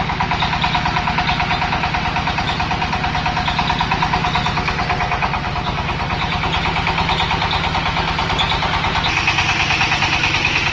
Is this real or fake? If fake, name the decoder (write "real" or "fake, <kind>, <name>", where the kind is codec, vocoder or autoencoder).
real